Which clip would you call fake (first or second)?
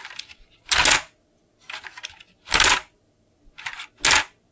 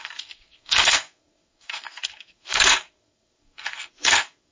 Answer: second